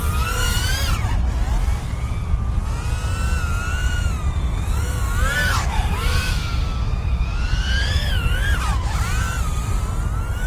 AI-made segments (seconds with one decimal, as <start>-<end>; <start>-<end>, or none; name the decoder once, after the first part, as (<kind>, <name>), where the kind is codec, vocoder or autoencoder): 5.4-8.1 (codec, DAC)